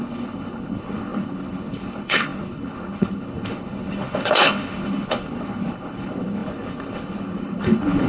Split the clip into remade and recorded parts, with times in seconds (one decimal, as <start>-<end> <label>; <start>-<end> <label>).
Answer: 0.0-8.1 remade